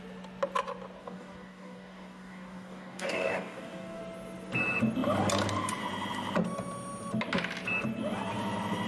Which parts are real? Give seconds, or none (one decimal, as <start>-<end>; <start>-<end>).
0.0-1.0; 4.0-8.9